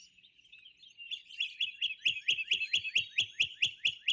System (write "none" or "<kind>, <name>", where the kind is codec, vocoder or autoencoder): none